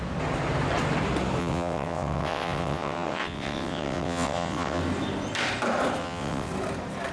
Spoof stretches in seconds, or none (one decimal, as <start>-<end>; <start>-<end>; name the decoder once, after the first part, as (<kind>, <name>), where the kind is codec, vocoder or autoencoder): 1.4-4.8 (vocoder, WaveNeXt); 6.0-6.5